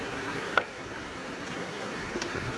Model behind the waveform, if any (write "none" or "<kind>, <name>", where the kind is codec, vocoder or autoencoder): codec, SNAC